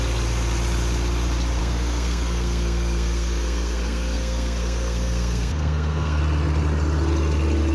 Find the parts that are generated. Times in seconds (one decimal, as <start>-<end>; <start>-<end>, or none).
1.6-6.2